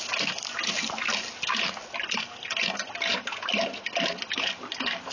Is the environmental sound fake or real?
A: real